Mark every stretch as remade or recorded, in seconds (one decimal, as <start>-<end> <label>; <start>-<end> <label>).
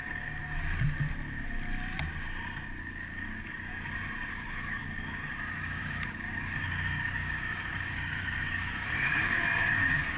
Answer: 0.0-0.4 remade; 0.4-2.8 recorded; 2.8-3.7 remade; 3.7-4.3 recorded; 4.3-10.2 remade